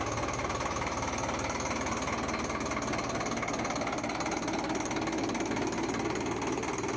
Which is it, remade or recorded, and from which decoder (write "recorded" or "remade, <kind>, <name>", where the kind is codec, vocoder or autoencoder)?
recorded